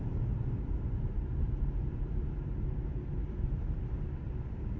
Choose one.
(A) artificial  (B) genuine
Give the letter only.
A